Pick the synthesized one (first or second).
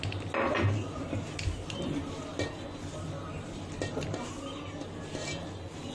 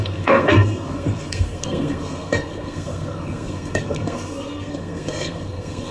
second